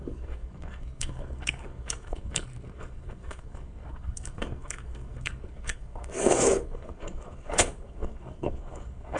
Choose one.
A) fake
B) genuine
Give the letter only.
A